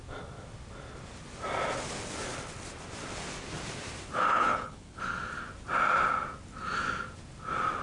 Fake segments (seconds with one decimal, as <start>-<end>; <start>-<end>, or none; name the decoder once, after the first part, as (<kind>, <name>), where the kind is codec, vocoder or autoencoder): 4.3-5.0 (codec, HILCodec)